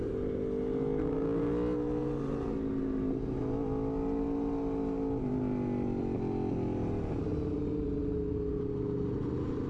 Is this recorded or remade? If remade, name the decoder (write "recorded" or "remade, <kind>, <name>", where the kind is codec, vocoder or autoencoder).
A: recorded